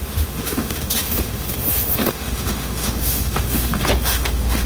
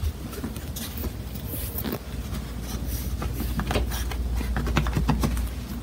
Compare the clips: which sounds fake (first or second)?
first